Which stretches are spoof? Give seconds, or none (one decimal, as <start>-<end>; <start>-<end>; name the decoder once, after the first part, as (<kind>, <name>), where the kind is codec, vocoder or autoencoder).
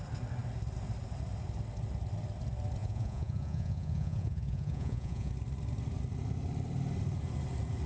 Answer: 2.8-5.3 (vocoder, Vocos)